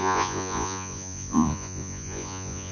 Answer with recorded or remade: remade